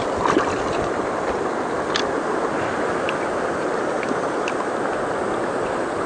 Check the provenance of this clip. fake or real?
real